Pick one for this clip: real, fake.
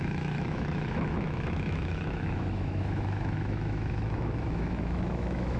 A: fake